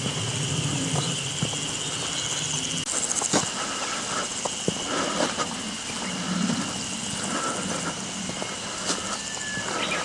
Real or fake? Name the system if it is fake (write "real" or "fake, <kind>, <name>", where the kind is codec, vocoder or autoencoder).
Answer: real